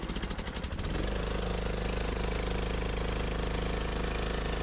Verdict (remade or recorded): recorded